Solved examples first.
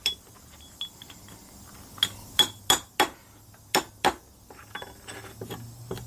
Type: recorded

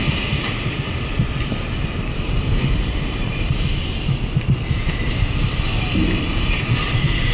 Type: remade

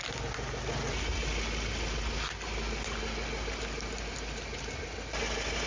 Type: recorded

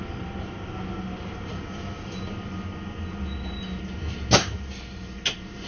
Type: recorded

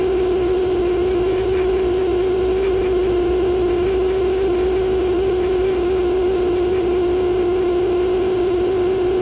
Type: remade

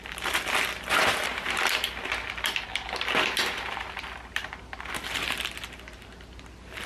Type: remade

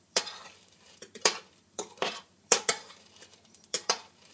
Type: remade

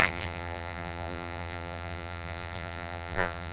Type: remade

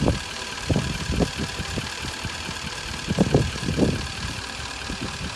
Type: remade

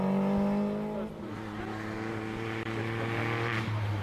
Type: recorded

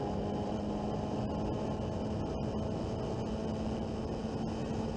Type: recorded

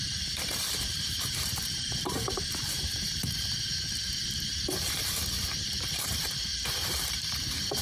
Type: remade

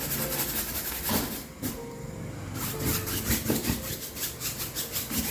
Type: recorded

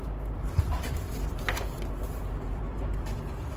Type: remade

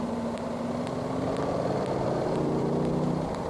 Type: remade